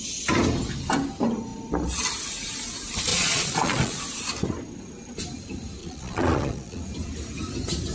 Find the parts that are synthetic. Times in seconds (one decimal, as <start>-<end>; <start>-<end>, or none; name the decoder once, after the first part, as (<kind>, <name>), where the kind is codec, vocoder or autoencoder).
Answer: 3.1-4.0 (vocoder, Vocos); 5.8-6.8